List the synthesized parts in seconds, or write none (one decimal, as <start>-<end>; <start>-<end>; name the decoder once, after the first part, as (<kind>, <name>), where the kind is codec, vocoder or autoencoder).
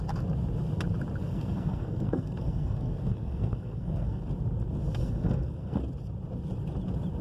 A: 1.2-4.2 (codec, SNAC); 5.0-5.8